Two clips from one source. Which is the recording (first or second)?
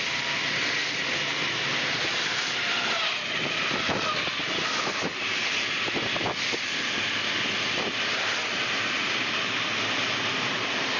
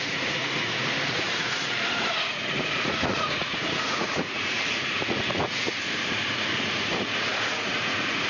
first